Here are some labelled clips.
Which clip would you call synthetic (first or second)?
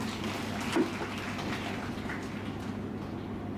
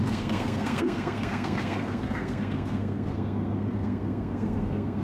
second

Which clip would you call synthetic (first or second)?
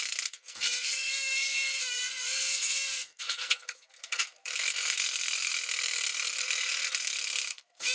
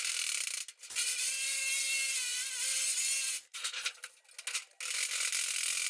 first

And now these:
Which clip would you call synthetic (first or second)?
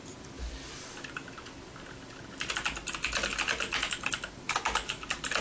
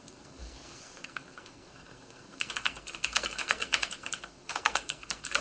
second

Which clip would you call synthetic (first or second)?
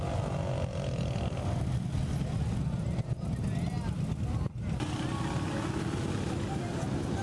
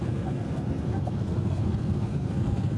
second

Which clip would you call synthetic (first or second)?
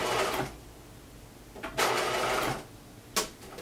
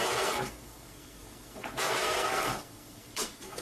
second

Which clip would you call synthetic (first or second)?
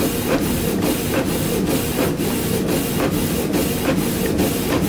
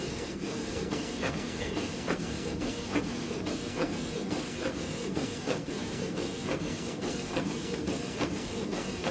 second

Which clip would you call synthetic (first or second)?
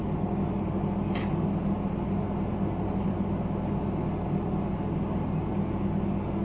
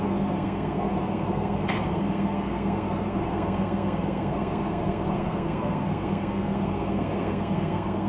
second